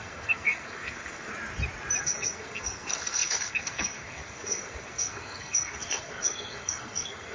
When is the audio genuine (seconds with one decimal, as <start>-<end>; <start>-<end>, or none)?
1.3-2.0